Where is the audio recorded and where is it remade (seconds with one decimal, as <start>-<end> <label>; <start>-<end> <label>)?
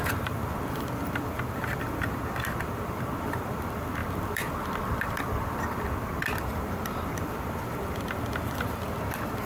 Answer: 0.0-9.5 remade